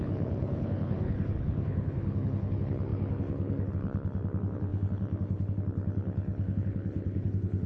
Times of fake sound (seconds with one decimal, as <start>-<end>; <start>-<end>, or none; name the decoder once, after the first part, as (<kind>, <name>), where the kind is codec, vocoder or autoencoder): 0.0-7.7 (codec, HILCodec)